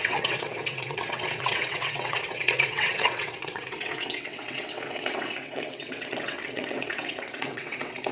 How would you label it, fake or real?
fake